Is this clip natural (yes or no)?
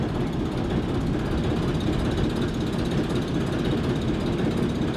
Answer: yes